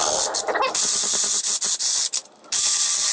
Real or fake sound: real